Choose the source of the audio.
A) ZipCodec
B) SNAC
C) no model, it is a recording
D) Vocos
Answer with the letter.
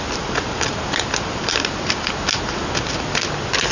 C